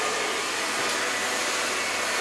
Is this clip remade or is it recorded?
recorded